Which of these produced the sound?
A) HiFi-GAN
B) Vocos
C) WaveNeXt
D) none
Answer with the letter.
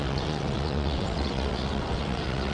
C